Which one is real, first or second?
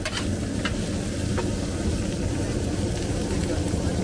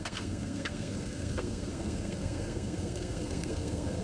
first